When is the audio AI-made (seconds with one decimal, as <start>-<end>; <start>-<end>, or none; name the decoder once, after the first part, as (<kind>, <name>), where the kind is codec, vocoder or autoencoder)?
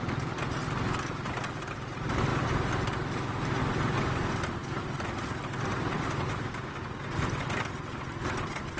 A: 0.0-0.6 (vocoder, BigVGAN v2); 1.3-2.3; 3.6-8.8